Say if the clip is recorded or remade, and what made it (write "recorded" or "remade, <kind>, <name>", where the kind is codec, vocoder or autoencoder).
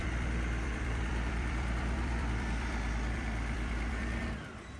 remade, vocoder, BigVGAN v2